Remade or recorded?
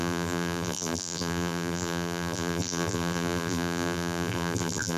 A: remade